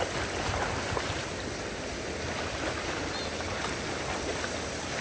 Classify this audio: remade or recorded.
recorded